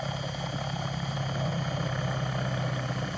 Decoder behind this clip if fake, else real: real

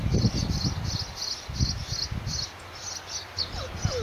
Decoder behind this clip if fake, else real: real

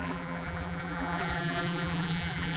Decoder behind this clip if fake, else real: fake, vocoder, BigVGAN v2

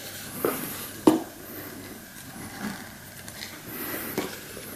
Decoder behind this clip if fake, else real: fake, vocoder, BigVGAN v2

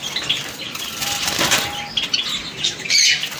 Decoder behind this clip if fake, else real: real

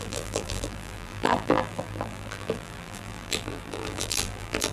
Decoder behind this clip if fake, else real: fake, vocoder, BigVGAN v2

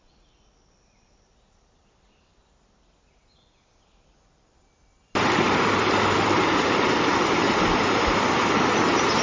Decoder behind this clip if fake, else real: fake, vocoder, BigVGAN v2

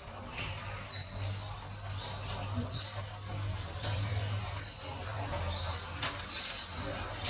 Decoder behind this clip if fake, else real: fake, vocoder, BigVGAN v2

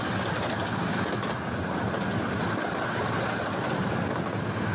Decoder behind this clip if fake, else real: real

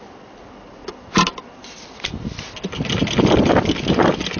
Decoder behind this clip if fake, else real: real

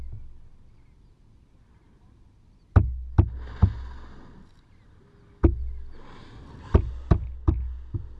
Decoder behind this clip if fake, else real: real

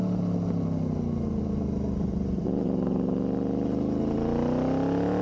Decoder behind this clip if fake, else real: real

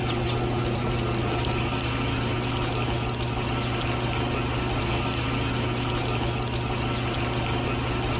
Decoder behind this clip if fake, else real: real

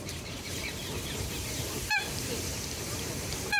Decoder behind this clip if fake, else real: fake, vocoder, BigVGAN v2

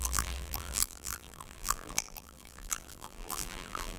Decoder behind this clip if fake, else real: fake, vocoder, BigVGAN v2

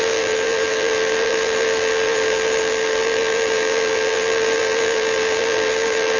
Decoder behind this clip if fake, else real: fake, vocoder, BigVGAN v2